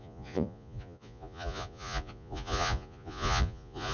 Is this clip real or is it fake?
fake